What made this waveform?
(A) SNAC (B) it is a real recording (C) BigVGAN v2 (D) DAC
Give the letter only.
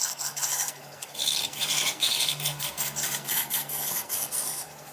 A